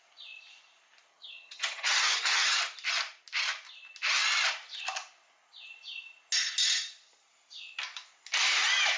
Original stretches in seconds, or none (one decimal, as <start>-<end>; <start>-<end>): 0.0-1.1; 2.6-9.0